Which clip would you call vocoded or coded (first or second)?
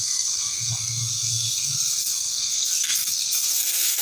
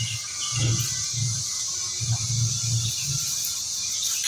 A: first